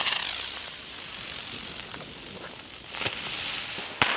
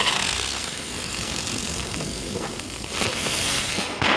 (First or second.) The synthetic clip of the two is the second